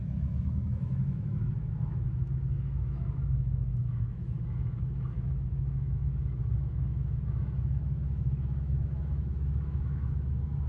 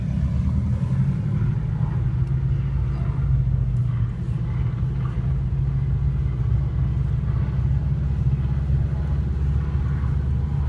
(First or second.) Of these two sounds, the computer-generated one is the first